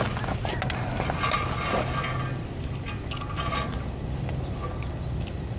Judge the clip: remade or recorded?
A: recorded